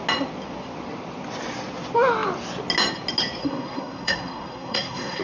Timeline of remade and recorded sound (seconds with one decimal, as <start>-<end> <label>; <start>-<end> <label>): 0.0-3.4 recorded; 3.4-5.2 remade